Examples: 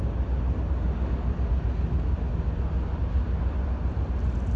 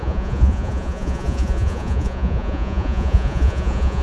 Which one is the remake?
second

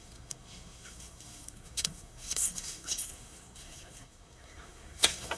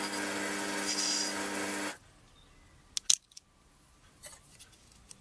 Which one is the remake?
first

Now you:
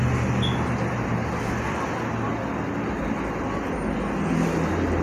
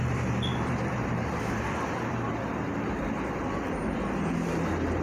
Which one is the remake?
second